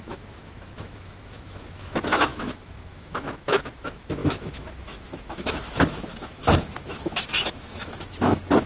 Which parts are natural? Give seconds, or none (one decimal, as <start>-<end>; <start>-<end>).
none